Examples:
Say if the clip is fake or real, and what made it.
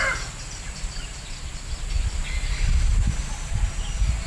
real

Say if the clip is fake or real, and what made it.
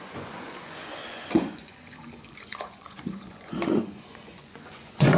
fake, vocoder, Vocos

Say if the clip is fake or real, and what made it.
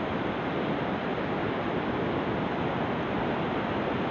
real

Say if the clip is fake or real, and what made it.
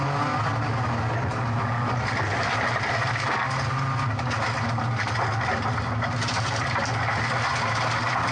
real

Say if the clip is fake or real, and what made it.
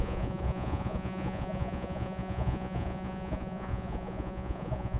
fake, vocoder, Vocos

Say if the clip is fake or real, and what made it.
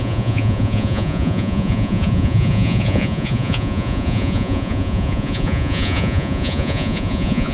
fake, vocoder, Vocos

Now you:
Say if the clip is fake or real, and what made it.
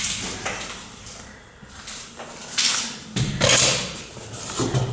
real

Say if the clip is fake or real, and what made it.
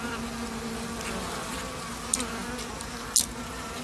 real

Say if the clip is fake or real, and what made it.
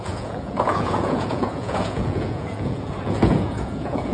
fake, vocoder, Vocos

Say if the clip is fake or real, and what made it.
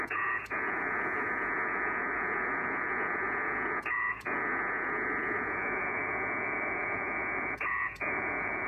fake, vocoder, Vocos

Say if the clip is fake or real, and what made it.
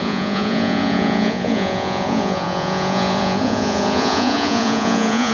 fake, vocoder, Vocos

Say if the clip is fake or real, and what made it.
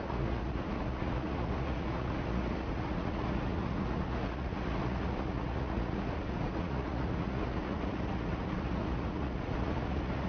fake, vocoder, Vocos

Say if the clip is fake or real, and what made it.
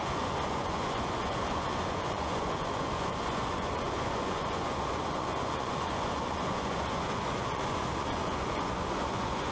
fake, vocoder, Vocos